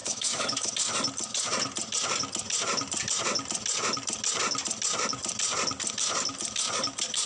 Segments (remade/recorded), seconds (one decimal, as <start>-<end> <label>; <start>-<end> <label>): 0.0-0.7 remade; 0.7-7.3 recorded